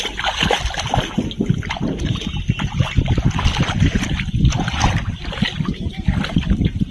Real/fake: real